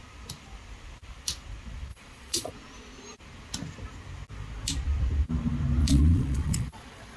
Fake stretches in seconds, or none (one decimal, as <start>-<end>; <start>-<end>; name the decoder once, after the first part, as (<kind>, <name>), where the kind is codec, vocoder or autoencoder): 1.9-2.5 (vocoder, Vocos); 5.8-7.2